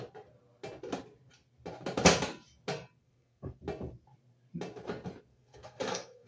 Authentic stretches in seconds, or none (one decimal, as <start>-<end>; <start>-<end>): 0.0-3.0; 3.6-5.3